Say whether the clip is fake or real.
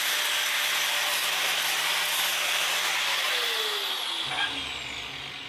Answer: real